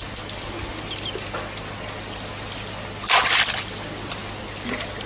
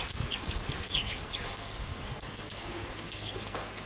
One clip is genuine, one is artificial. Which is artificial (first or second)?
second